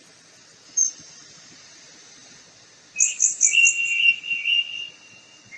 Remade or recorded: recorded